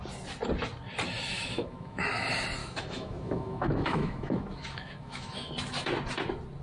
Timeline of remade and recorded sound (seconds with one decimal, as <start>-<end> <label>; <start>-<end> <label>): 0.0-1.3 recorded; 1.3-2.1 remade; 2.1-2.6 recorded; 2.6-5.5 remade; 5.5-6.6 recorded